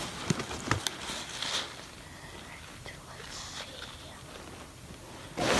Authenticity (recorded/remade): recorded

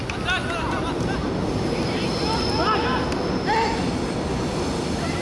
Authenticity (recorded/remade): recorded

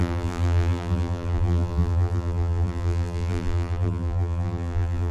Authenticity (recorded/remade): remade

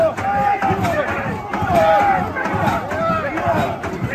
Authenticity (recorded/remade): recorded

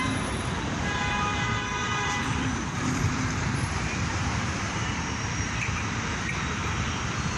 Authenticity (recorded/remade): remade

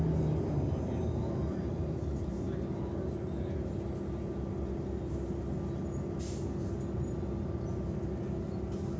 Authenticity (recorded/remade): recorded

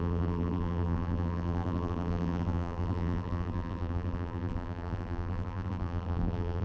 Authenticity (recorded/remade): remade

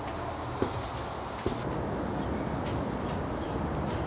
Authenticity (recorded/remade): recorded